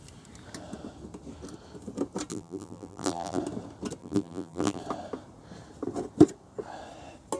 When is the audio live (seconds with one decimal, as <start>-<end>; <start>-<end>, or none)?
0.0-2.3; 3.4-4.0; 4.8-7.4